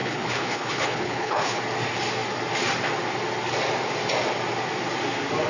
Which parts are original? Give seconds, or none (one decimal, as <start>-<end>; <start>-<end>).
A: 1.6-5.5